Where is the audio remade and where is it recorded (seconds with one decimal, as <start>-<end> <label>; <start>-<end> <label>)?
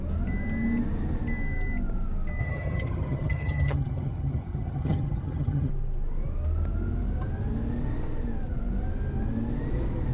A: 0.0-2.4 recorded; 2.4-5.7 remade; 5.7-10.1 recorded